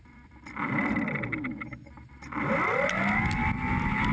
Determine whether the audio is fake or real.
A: real